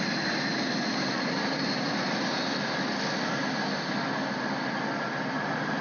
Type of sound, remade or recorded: recorded